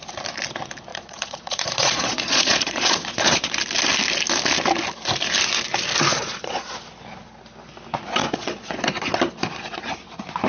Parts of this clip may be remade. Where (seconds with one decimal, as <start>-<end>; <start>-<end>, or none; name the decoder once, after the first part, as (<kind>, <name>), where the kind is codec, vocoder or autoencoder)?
0.9-3.5 (vocoder, Vocos); 6.1-6.6; 8.2-8.8